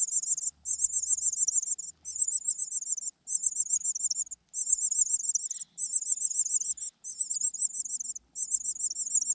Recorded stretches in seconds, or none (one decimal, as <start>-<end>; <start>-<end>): 0.0-9.3